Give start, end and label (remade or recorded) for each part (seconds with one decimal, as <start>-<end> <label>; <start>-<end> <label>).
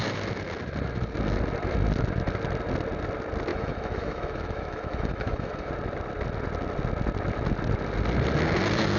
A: 0.0-3.5 recorded; 3.5-5.7 remade; 5.7-9.0 recorded